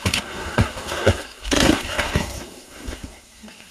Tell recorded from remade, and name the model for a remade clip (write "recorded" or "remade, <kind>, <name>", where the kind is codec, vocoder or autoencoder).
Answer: remade, codec, SNAC